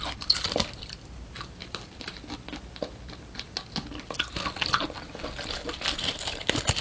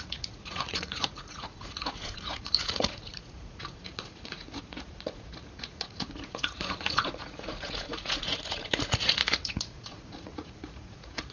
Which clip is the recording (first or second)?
first